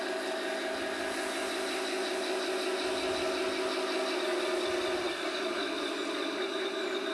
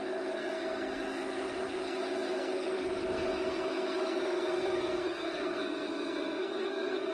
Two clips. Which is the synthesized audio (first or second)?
second